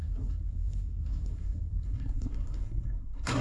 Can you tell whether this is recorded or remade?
remade